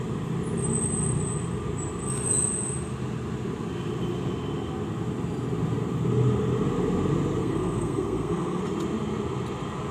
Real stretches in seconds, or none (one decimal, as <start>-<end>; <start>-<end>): 0.0-7.4; 8.6-9.9